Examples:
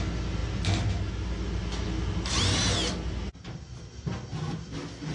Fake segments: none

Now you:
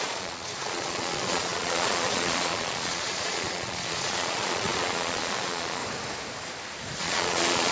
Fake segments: 0.0-5.8 (vocoder, Vocos); 7.0-7.7

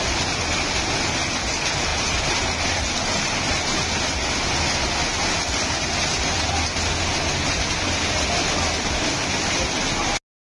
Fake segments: none

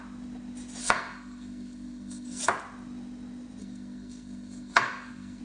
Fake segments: 0.8-2.4 (codec, SNAC); 3.6-5.4